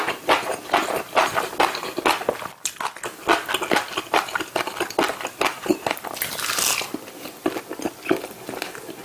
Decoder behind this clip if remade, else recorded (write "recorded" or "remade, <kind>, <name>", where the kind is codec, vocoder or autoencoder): recorded